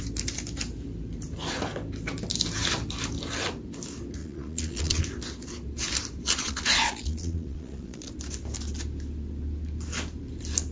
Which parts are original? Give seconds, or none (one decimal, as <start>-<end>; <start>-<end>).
0.0-4.2; 5.0-6.4; 8.1-10.7

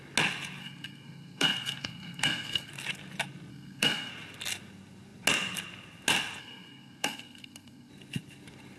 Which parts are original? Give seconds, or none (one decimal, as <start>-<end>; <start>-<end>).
0.0-0.6; 2.7-3.5; 4.1-6.4; 7.9-8.8

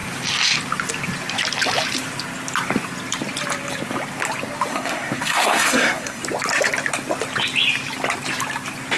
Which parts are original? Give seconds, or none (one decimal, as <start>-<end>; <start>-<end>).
0.0-4.7; 6.2-9.0